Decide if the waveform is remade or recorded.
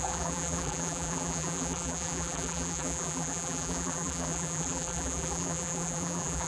remade